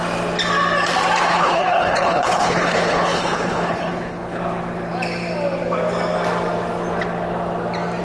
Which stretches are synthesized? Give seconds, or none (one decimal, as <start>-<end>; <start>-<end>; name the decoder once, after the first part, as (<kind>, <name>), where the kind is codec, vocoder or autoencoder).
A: 1.3-4.4 (codec, HILCodec)